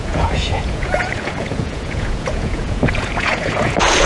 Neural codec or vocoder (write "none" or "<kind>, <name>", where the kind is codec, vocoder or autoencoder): vocoder, Vocos